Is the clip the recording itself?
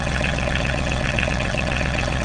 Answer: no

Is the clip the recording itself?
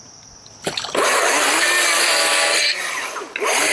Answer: yes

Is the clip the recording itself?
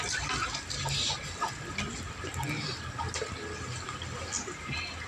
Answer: yes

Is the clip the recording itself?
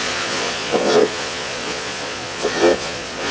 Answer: no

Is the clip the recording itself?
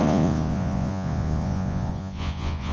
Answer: no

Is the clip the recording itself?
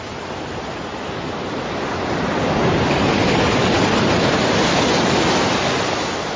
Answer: yes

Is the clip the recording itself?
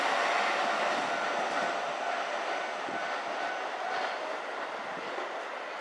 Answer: yes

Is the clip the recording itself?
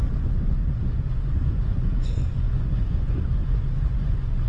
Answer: no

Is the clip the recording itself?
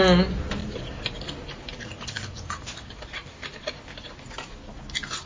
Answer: yes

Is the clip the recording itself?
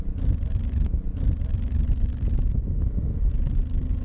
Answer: yes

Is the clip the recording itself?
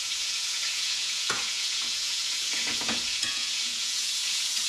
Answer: no